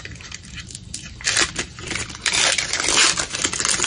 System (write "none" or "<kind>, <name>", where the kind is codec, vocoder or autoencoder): none